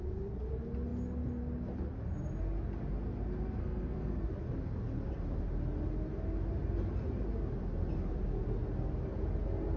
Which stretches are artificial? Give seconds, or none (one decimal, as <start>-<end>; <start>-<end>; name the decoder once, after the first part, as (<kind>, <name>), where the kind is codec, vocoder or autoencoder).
3.6-4.3 (codec, SNAC)